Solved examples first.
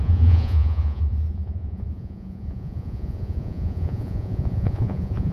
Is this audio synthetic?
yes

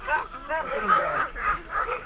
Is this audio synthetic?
yes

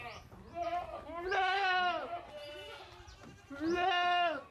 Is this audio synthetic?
no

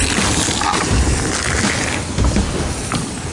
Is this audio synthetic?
no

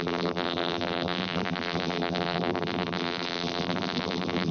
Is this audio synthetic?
yes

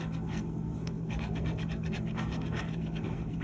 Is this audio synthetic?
yes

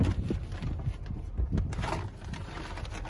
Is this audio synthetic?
no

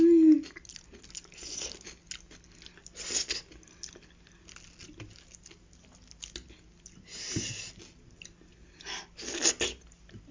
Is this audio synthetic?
no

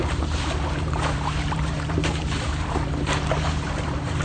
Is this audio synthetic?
yes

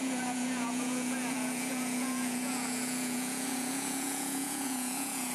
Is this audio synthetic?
yes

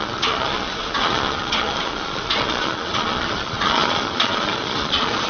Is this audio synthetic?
yes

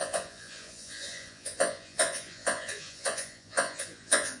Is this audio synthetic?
yes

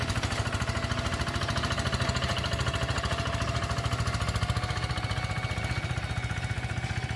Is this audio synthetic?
no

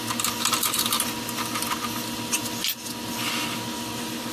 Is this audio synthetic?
no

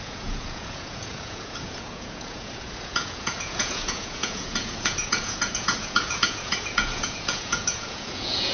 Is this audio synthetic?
yes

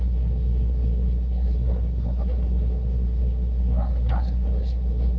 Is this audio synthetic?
yes